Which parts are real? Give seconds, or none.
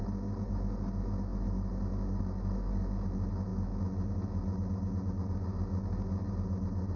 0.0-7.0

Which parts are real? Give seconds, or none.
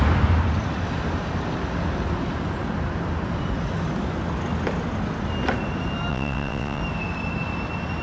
0.0-6.1; 6.8-8.0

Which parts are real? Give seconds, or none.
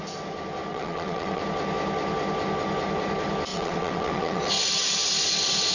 0.0-0.7; 1.4-3.5; 4.5-5.7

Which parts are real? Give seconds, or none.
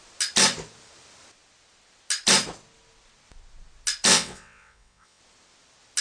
0.0-4.1; 5.2-6.0